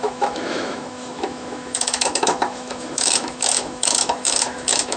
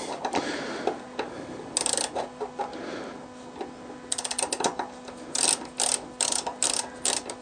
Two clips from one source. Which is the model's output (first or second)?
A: first